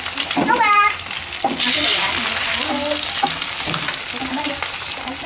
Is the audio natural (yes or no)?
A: yes